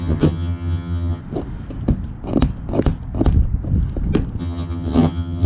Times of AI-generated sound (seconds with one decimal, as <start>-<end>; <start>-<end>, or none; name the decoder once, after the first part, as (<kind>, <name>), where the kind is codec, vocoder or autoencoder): 0.0-1.2 (vocoder, HiFi-GAN); 4.4-5.5